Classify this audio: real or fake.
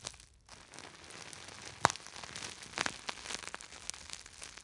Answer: real